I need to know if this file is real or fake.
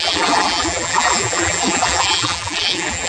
fake